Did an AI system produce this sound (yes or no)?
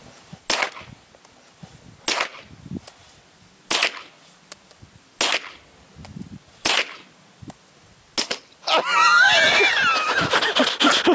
no